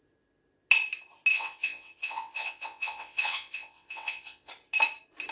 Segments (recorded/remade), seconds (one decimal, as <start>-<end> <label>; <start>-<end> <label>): 0.0-1.3 recorded; 1.3-4.5 remade; 4.5-5.3 recorded